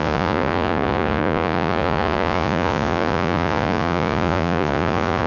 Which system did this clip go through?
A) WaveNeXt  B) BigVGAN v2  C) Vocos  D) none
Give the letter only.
C